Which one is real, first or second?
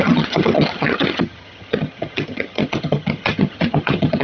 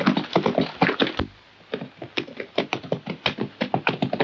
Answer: second